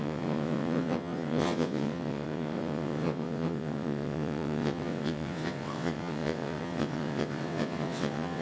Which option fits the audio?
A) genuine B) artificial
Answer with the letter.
B